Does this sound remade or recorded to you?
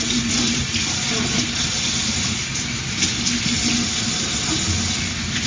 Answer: recorded